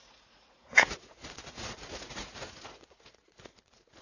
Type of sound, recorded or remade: remade